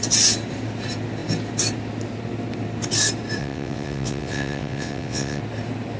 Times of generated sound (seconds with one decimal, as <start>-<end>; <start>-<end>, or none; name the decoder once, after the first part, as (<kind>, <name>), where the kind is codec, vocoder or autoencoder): 3.4-5.4 (vocoder, WaveNeXt)